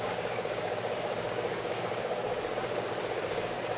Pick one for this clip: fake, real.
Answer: fake